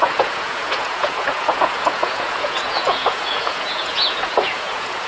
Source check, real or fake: fake